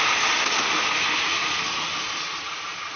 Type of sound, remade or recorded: recorded